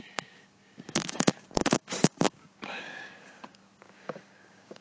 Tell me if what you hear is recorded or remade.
remade